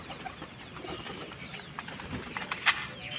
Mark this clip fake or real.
real